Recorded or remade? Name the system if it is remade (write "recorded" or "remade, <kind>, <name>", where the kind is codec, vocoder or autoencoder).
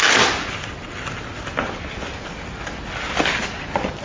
recorded